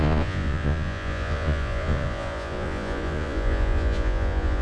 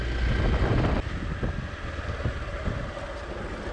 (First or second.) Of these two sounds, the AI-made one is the first